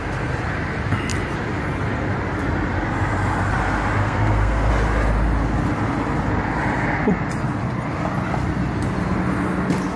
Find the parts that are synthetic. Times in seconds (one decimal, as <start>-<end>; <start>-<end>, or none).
4.0-4.7